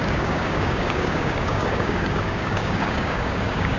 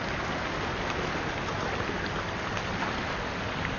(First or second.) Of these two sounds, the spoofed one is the first